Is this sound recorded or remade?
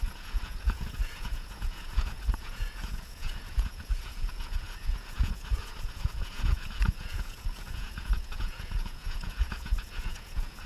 remade